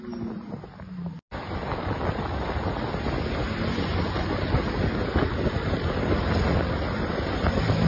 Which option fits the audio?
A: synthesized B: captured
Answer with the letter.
B